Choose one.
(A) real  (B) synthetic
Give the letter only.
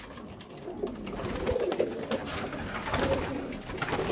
A